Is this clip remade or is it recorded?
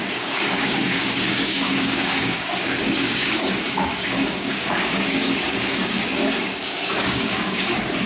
remade